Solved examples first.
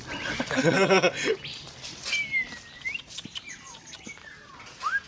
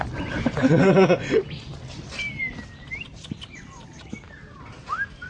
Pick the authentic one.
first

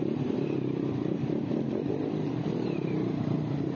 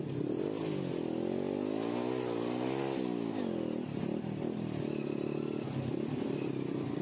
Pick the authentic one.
second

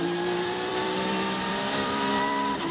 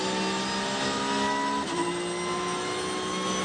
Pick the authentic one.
second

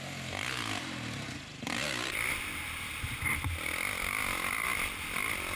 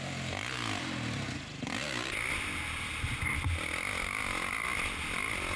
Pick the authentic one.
second